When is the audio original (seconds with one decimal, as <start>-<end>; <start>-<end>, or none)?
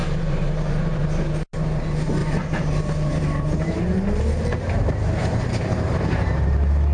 1.0-2.2; 3.8-5.2; 6.5-6.9